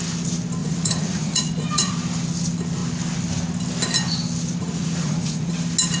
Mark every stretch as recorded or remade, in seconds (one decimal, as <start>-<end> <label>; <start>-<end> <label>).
0.0-0.6 recorded; 0.6-1.9 remade; 1.9-4.6 recorded; 4.6-5.5 remade; 5.5-6.0 recorded